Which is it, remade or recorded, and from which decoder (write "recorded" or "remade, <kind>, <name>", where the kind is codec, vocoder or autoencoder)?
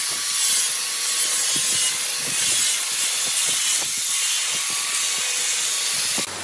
recorded